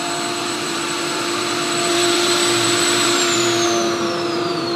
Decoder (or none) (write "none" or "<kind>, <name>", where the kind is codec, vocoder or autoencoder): vocoder, BigVGAN v2